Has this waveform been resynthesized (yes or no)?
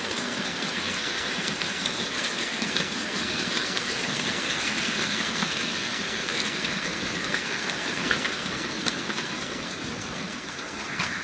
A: yes